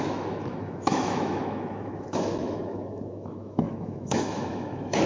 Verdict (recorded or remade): remade